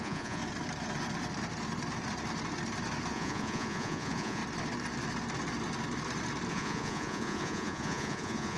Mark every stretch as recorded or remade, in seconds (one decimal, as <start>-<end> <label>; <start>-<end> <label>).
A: 0.0-0.4 remade; 0.4-3.1 recorded; 3.1-4.4 remade; 4.4-6.5 recorded; 6.5-8.6 remade